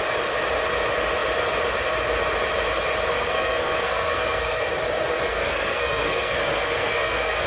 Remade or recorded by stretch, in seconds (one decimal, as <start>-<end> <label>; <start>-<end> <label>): 0.0-3.1 recorded; 3.1-4.6 remade; 4.6-5.3 recorded; 5.3-7.5 remade